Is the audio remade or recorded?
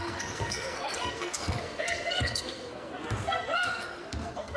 remade